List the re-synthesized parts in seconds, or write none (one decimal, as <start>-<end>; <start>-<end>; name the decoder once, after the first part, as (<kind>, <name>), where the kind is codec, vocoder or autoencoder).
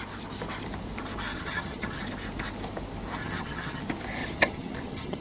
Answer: 1.3-2.0 (vocoder, HiFi-GAN); 3.2-3.8; 4.2-5.2